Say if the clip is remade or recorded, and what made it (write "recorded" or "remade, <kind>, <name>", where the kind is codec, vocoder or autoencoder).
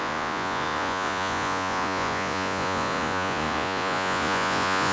remade, vocoder, Vocos